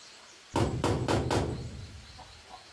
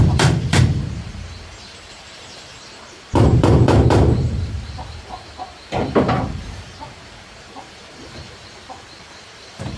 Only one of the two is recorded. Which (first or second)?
first